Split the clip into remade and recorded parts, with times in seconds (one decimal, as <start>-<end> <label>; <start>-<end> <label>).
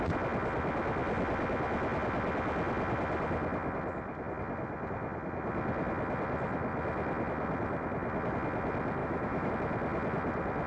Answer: 0.0-9.0 recorded; 9.0-9.5 remade; 9.5-10.7 recorded